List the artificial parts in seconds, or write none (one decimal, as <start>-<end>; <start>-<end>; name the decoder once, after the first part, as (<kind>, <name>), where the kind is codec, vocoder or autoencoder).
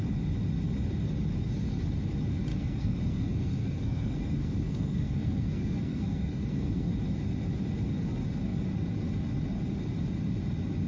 2.5-6.9 (codec, SNAC)